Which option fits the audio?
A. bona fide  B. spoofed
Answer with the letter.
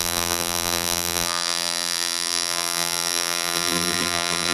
B